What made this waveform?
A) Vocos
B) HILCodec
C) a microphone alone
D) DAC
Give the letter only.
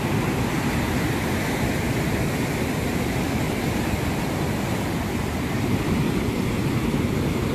C